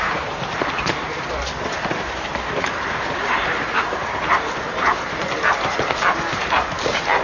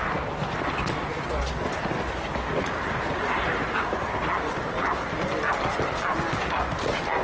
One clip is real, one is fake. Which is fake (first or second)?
first